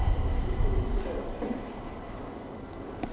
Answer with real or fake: real